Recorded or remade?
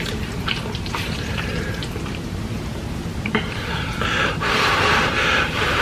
remade